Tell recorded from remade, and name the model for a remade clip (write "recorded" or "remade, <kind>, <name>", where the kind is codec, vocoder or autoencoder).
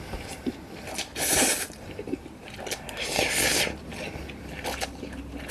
remade, vocoder, BigVGAN v2